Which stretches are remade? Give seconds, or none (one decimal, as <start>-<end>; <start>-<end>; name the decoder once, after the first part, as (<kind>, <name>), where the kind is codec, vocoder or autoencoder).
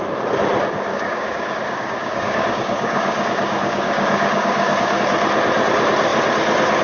0.9-5.0 (codec, DAC)